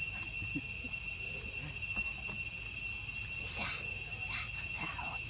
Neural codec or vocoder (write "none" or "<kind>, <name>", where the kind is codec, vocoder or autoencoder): none